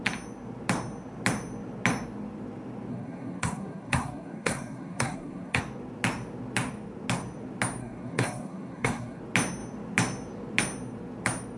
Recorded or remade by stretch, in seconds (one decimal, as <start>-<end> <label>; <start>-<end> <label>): 0.0-2.9 recorded; 2.9-5.6 remade; 5.6-7.8 recorded; 7.8-9.2 remade; 9.2-11.6 recorded